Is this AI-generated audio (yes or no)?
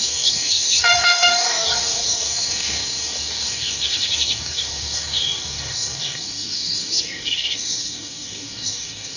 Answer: yes